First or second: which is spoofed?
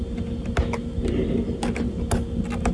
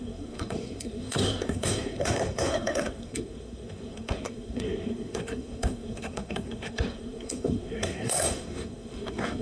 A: second